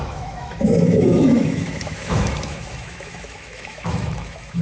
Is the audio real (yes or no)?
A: no